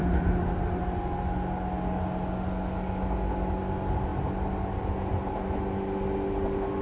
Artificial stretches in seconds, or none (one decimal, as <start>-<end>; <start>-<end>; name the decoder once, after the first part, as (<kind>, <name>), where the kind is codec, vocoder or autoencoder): none